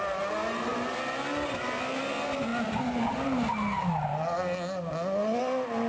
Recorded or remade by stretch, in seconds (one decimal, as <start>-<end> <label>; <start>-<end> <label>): 0.0-0.7 recorded; 0.7-2.0 remade; 2.0-2.5 recorded; 2.5-3.4 remade; 3.4-5.9 recorded